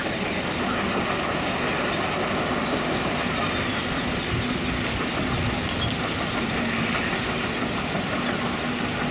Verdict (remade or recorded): recorded